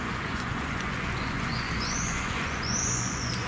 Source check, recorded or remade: remade